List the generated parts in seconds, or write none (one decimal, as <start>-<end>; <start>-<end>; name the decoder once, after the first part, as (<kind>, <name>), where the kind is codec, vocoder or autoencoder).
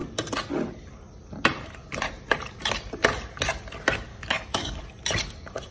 4.1-4.8 (codec, DAC)